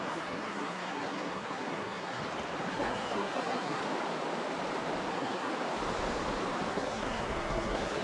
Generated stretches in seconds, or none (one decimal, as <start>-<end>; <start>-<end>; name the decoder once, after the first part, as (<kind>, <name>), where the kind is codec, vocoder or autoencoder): 0.0-2.2 (codec, SNAC); 2.7-3.8; 5.1-5.5; 6.7-8.0